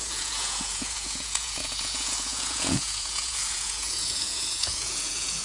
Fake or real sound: fake